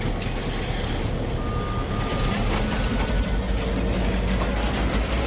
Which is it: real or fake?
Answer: real